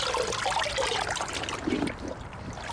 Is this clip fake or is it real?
real